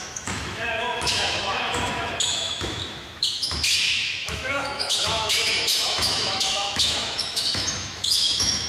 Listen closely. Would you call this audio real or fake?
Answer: fake